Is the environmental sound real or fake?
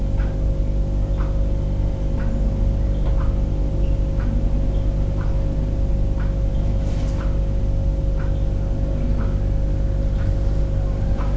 real